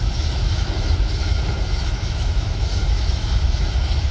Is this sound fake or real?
fake